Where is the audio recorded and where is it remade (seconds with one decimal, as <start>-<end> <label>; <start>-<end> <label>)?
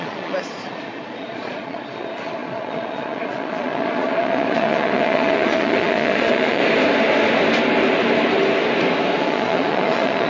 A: 0.0-6.6 remade; 6.6-9.2 recorded; 9.2-10.3 remade